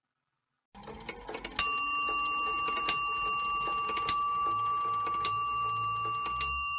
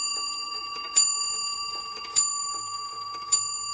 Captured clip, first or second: first